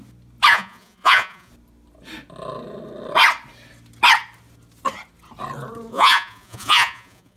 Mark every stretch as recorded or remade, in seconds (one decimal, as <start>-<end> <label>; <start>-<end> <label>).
0.0-0.5 recorded; 0.5-1.5 remade; 1.5-5.9 recorded; 5.9-7.4 remade